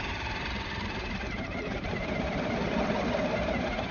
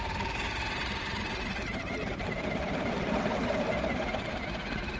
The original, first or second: second